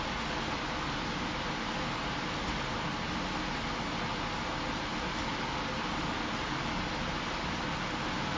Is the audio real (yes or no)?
yes